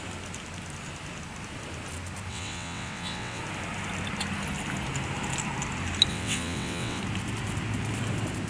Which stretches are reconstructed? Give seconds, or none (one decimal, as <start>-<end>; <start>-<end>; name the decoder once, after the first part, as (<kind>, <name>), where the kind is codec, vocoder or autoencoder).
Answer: 2.3-3.4 (vocoder, WaveNeXt); 6.1-7.0